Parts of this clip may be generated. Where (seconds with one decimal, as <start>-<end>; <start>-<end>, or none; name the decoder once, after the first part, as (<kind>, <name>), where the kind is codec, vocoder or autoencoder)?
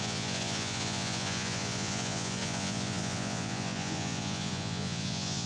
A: 0.0-5.5 (vocoder, Vocos)